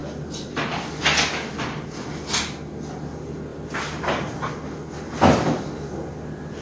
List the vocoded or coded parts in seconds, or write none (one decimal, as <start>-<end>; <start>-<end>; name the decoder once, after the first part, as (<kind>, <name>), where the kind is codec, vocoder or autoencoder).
none